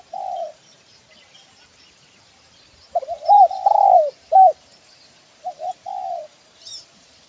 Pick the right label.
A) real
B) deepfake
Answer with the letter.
B